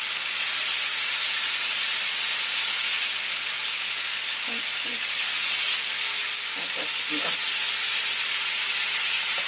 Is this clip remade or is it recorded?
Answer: recorded